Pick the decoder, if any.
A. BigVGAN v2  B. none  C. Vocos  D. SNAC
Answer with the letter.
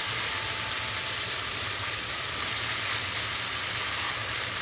B